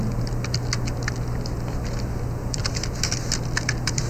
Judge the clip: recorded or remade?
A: recorded